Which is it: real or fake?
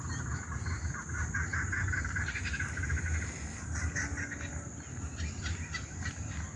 real